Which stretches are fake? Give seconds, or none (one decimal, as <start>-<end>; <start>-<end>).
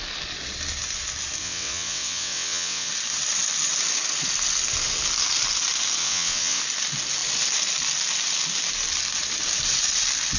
1.4-2.9; 6.0-6.6